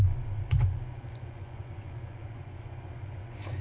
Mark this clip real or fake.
fake